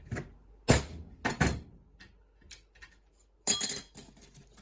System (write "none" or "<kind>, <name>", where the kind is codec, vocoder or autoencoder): none